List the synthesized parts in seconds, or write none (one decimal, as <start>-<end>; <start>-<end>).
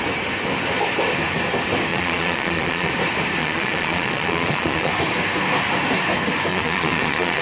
1.9-2.9; 3.4-4.9; 6.5-7.4